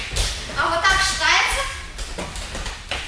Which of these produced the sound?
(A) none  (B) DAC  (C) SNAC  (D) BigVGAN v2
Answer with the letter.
A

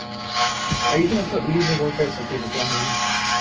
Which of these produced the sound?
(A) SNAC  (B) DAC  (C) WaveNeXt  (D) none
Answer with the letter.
B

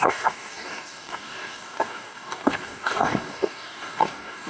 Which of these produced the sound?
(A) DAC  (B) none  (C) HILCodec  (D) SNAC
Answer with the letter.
A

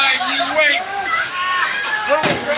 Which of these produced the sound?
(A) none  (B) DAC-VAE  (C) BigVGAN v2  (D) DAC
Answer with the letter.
D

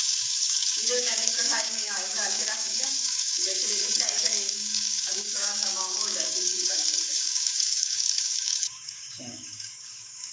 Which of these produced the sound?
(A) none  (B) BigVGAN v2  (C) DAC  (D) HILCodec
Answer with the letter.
C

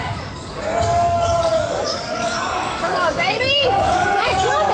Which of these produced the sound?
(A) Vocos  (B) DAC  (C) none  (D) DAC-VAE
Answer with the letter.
B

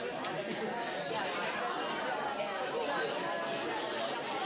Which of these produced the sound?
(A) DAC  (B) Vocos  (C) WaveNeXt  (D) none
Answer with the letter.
D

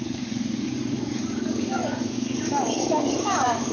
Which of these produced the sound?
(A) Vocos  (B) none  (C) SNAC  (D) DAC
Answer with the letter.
D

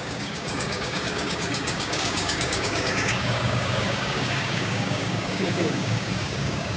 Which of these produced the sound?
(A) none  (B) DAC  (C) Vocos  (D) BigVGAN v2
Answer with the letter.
B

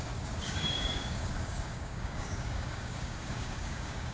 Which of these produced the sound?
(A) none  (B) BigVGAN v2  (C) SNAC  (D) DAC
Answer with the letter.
D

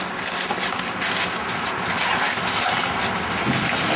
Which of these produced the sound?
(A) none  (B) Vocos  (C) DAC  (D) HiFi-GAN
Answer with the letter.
A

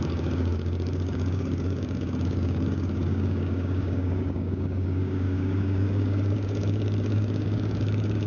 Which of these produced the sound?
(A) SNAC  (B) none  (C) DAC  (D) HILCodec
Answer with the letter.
C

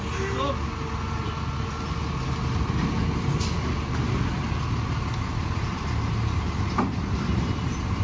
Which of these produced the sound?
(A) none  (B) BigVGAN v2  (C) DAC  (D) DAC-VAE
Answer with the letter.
A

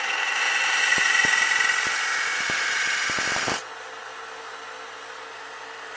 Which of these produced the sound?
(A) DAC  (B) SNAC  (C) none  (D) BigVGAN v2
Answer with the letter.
C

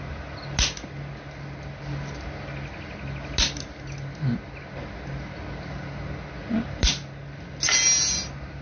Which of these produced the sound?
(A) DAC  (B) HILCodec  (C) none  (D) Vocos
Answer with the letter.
C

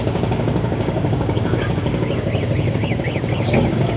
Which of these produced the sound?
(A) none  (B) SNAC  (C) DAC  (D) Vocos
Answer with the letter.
C